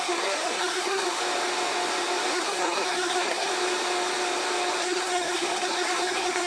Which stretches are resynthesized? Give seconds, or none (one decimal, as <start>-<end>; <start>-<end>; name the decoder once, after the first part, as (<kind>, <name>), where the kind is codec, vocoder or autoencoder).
0.0-1.2 (codec, SNAC); 2.3-3.5; 4.8-6.5